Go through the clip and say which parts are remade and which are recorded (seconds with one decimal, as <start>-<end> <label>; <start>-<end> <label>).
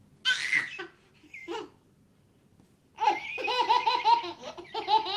0.0-5.2 recorded